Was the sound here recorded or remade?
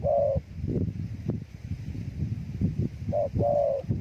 recorded